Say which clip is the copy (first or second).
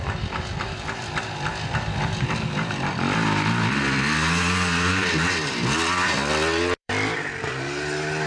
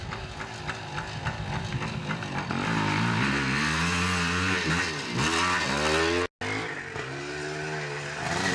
first